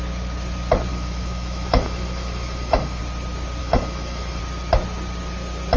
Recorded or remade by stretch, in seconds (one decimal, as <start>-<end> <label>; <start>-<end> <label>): 0.0-0.9 recorded; 0.9-3.0 remade; 3.0-3.6 recorded; 3.6-4.4 remade; 4.4-5.8 recorded